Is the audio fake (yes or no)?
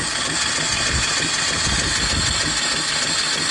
no